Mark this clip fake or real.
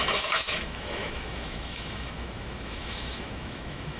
fake